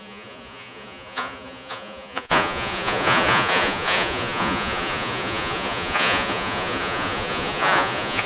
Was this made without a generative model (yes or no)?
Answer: no